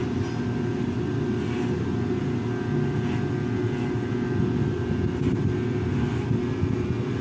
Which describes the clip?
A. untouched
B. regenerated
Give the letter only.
A